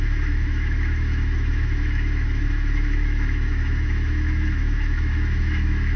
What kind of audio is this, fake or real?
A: fake